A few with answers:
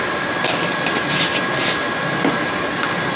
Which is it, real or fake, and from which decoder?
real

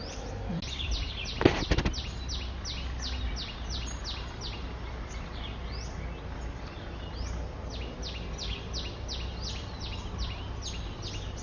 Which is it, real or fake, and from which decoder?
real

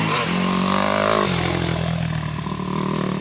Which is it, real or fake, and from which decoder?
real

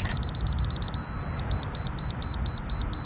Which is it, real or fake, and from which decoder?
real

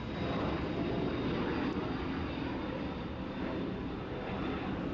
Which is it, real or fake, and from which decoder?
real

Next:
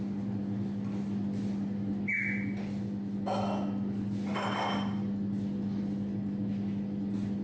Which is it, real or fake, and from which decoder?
real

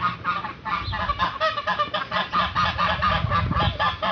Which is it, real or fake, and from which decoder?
real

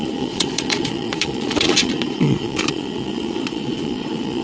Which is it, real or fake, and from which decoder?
fake, vocoder, Vocos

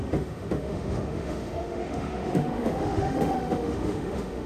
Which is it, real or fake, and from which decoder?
fake, autoencoder, DAC-VAE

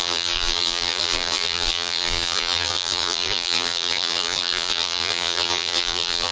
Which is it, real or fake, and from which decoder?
fake, vocoder, BigVGAN v2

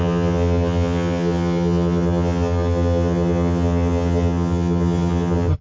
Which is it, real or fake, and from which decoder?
fake, vocoder, HiFi-GAN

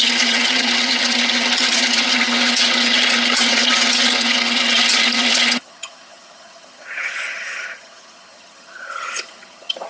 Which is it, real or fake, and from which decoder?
fake, vocoder, HiFi-GAN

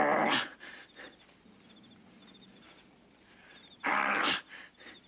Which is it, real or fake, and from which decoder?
real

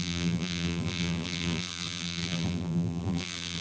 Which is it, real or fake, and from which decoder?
fake, vocoder, BigVGAN v2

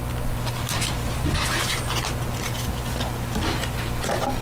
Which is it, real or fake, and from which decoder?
real